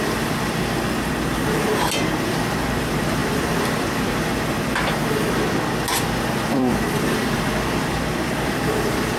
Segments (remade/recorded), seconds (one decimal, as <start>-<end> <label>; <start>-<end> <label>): 0.0-5.0 remade; 5.0-6.2 recorded; 6.2-9.2 remade